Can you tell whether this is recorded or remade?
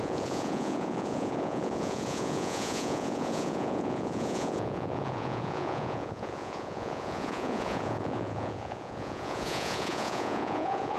remade